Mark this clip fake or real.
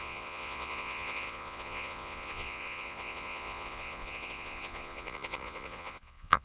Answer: fake